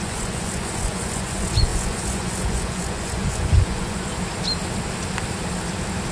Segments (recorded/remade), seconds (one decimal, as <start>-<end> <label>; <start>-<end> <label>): 0.0-4.1 remade; 4.1-6.1 recorded